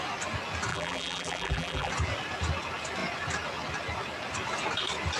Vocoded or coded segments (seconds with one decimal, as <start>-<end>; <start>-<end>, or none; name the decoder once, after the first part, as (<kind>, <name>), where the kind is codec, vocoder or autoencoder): 0.7-1.9 (vocoder, BigVGAN v2)